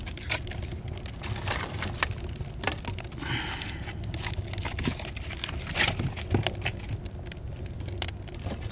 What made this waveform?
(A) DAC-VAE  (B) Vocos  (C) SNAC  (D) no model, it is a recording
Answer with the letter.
D